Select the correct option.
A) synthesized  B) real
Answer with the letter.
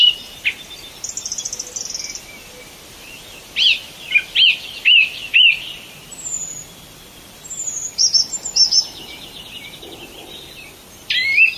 B